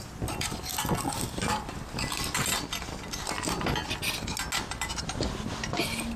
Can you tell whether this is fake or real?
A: real